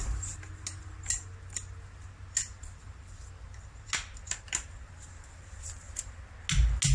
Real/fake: real